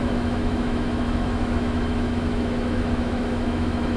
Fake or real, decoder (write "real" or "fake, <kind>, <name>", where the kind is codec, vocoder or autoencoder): fake, autoencoder, DAC-VAE